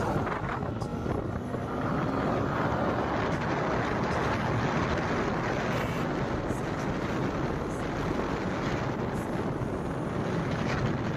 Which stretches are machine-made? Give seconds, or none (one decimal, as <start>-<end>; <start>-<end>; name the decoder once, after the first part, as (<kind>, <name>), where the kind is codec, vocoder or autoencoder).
none